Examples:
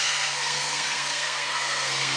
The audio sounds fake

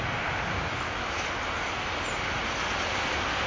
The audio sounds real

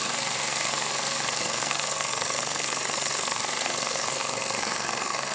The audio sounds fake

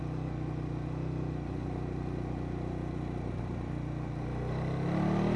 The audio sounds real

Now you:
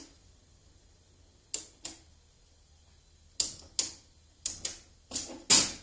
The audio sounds real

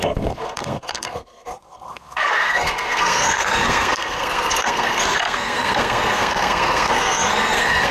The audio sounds fake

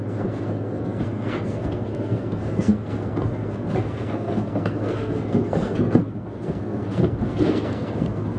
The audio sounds fake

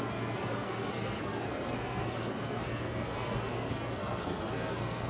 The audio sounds fake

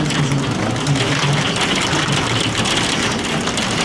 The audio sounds real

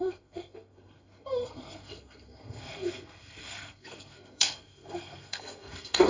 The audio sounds fake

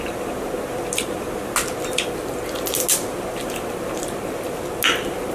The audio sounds real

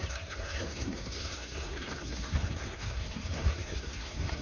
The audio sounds fake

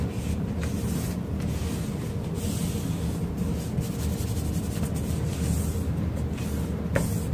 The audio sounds real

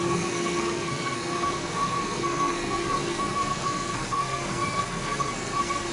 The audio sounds fake